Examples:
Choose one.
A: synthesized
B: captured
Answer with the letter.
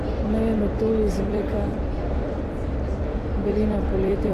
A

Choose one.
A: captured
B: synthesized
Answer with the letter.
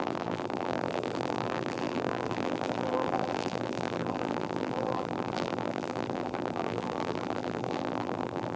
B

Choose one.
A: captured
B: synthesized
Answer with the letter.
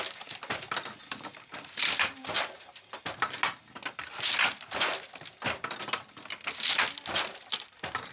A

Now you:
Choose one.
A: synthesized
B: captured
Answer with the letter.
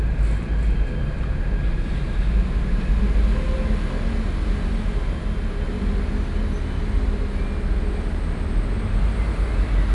B